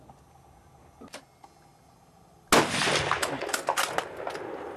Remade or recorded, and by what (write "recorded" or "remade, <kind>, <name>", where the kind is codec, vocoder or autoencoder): recorded